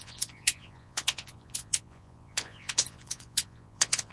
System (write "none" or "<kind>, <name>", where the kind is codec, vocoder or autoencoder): vocoder, Vocos